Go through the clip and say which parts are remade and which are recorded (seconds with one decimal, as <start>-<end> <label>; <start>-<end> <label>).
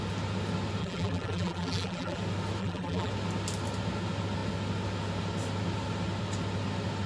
0.0-0.8 recorded; 0.8-2.2 remade; 2.2-2.6 recorded; 2.6-3.1 remade; 3.1-7.1 recorded